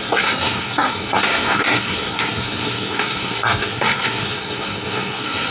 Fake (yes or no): yes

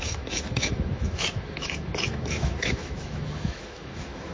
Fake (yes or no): yes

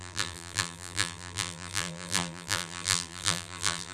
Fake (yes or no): yes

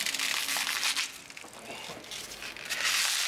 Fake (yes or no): no